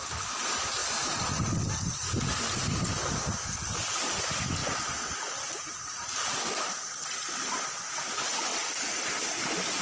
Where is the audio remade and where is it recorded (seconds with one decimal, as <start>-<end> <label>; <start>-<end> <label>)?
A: 0.0-9.8 recorded